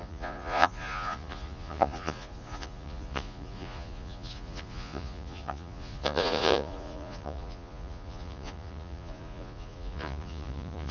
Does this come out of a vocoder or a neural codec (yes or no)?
yes